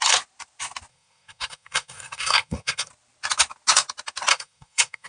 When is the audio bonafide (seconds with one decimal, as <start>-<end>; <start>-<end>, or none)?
0.0-0.9; 2.9-4.3